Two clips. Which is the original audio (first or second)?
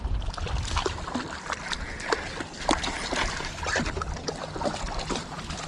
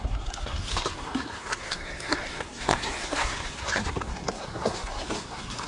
first